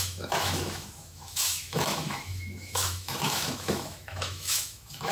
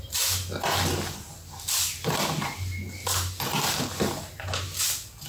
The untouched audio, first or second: second